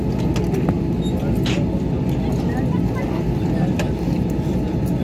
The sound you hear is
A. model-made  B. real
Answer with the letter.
B